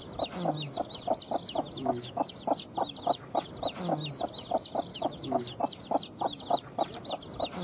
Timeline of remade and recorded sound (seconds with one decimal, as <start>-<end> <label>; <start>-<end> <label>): 0.0-1.8 recorded; 1.8-2.3 remade; 2.3-4.9 recorded; 4.9-5.4 remade; 5.4-7.6 recorded